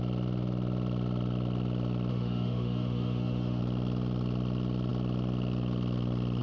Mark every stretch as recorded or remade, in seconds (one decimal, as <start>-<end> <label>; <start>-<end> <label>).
0.0-2.1 recorded; 2.1-3.6 remade; 3.6-6.4 recorded